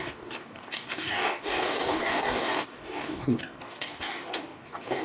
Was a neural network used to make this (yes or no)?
yes